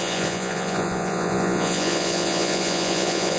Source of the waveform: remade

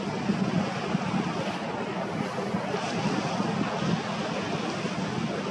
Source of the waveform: recorded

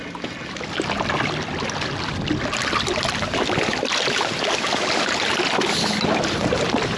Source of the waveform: recorded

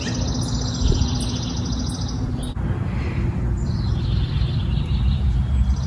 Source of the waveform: recorded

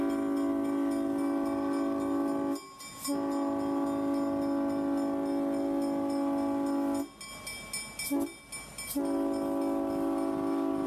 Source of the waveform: recorded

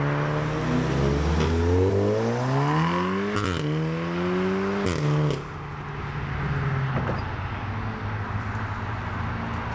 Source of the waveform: recorded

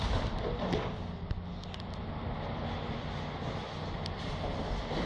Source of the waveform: recorded